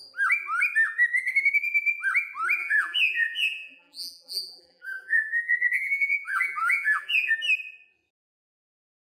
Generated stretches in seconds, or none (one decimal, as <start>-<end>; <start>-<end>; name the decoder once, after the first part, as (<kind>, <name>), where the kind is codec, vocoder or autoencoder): 2.6-7.3 (vocoder, BigVGAN v2)